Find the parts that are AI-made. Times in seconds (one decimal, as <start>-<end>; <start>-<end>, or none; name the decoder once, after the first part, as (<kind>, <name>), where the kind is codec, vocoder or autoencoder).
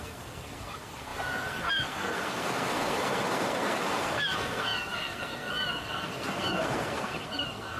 0.0-7.8 (codec, SNAC)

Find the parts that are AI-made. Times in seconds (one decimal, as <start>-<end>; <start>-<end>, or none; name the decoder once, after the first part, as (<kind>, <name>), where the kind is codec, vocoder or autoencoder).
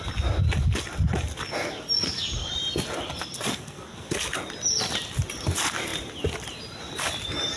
3.5-4.2 (codec, SNAC)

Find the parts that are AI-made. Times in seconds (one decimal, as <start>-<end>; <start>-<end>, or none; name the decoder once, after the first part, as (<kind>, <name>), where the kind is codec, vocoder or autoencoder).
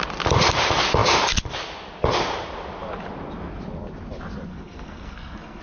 4.5-5.6 (codec, SNAC)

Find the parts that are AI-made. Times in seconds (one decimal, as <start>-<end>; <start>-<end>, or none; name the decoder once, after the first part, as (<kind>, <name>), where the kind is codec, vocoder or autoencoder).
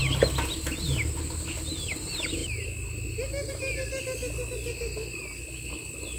none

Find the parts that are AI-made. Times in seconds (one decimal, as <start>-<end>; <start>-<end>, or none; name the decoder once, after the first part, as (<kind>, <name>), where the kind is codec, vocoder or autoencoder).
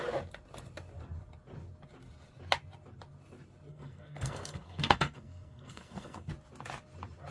3.7-6.3 (codec, SNAC)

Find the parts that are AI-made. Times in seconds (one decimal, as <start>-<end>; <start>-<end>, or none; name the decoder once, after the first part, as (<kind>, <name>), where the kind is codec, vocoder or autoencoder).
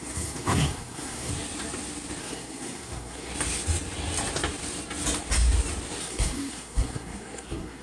0.0-1.3 (codec, SNAC); 2.2-3.3; 6.0-7.8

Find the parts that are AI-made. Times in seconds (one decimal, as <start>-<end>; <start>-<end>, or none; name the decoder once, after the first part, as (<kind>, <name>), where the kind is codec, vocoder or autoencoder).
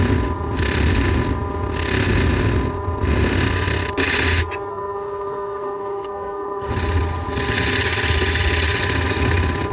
4.7-6.7 (codec, SNAC)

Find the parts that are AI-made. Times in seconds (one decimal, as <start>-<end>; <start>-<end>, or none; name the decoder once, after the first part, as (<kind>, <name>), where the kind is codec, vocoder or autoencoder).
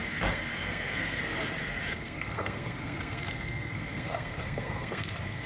0.0-1.2 (codec, SNAC); 1.9-5.5